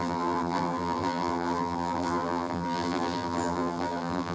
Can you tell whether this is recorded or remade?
remade